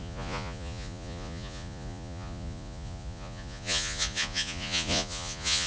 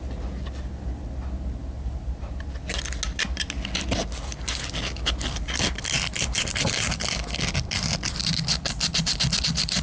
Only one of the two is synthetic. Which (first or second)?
first